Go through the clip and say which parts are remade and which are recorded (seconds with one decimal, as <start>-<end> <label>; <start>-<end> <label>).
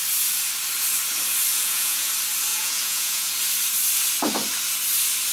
0.0-1.5 recorded; 1.5-2.1 remade; 2.1-2.5 recorded; 2.5-3.3 remade; 3.3-5.3 recorded